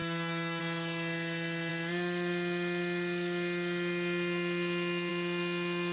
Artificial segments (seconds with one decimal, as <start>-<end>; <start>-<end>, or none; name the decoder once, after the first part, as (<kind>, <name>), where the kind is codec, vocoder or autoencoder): 0.0-0.6 (codec, DAC)